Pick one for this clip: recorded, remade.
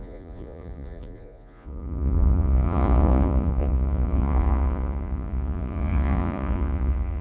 remade